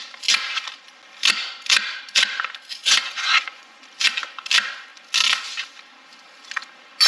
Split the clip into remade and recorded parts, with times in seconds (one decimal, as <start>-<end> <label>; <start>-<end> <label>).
0.0-2.8 recorded; 2.8-3.8 remade; 3.8-7.1 recorded